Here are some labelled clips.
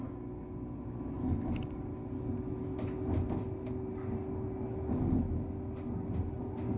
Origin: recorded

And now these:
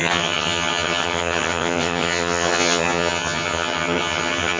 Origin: remade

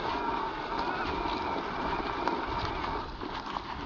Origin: recorded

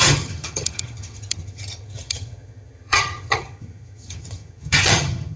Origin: remade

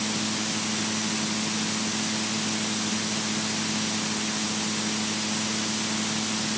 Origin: recorded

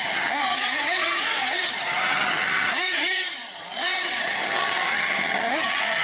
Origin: remade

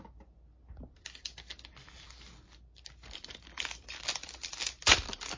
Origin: recorded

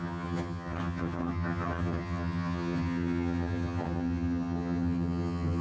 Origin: remade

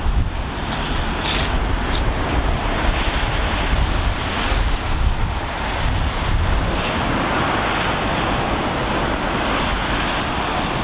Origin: recorded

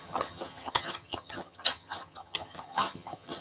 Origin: remade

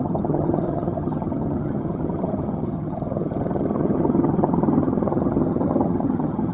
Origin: remade